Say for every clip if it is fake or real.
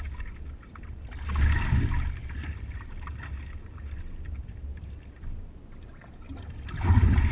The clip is real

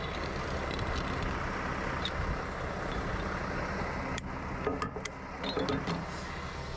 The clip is real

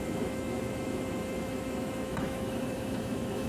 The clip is fake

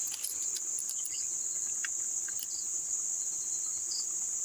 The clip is real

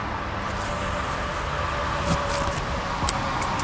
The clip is real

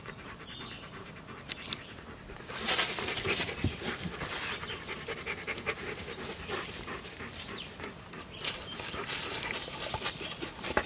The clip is real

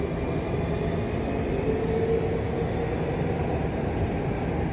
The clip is real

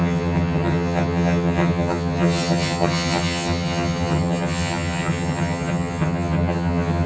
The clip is fake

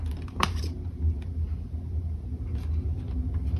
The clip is real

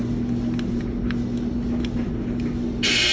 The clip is real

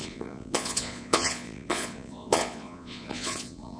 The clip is fake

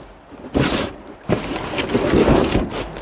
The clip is real